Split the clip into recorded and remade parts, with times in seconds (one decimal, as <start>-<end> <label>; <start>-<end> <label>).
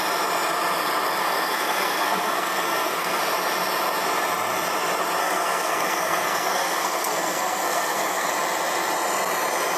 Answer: 0.0-1.2 recorded; 1.2-3.2 remade; 3.2-5.2 recorded; 5.2-8.3 remade; 8.3-9.8 recorded